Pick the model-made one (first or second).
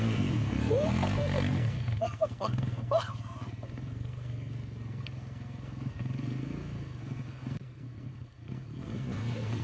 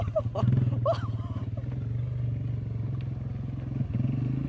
first